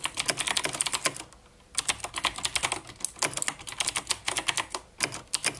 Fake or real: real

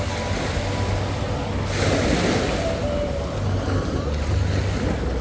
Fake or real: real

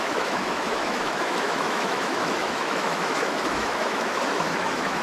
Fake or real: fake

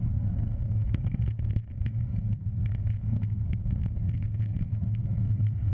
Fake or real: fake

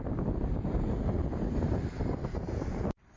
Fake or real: real